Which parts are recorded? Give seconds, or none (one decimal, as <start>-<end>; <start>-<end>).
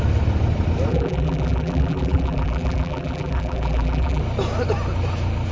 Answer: 0.0-0.9; 4.2-5.5